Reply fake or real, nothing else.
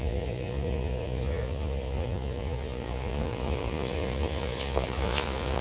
fake